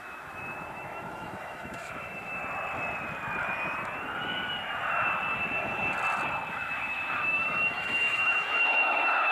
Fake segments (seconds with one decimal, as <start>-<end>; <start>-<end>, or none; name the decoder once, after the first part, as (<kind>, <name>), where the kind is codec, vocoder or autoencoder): 0.0-2.4 (autoencoder, DAC-VAE); 6.5-9.3